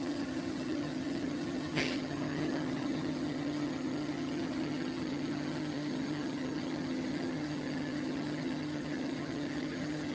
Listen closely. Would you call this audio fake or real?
fake